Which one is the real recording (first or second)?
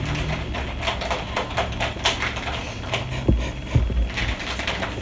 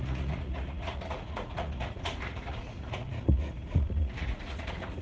first